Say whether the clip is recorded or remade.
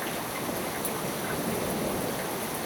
recorded